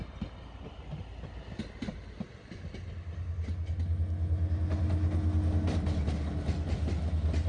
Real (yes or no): yes